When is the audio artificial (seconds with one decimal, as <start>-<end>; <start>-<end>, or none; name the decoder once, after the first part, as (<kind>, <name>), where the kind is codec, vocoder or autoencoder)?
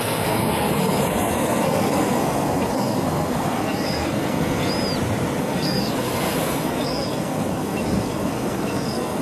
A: 0.0-4.7 (codec, SNAC); 5.4-9.2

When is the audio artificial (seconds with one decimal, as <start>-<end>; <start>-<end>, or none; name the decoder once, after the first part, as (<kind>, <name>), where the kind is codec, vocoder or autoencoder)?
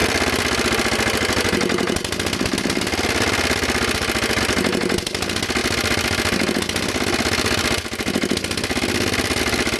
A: none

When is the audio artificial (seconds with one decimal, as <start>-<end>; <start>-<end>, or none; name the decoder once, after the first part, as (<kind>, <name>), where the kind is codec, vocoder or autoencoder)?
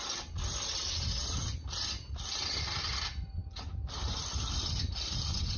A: none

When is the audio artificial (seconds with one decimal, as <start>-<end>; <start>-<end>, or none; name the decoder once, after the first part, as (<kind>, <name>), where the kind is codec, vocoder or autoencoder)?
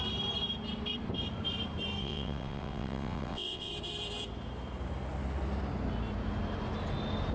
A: 2.0-3.7 (vocoder, WaveNeXt)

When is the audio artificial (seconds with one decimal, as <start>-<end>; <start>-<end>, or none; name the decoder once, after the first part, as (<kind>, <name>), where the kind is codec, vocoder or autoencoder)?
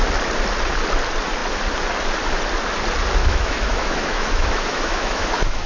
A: 3.2-5.7 (autoencoder, DAC-VAE)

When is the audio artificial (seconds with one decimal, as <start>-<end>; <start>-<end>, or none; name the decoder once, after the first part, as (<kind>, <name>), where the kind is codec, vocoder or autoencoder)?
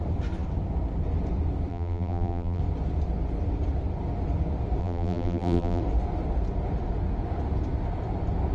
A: 1.7-2.6 (vocoder, BigVGAN v2); 4.8-5.8